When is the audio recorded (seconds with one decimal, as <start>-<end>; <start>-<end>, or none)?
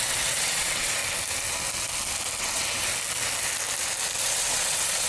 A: 1.0-2.4; 2.9-4.2